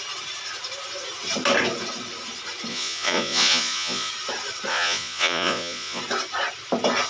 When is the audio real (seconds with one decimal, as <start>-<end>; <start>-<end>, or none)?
0.0-2.7; 4.1-4.7; 6.0-7.1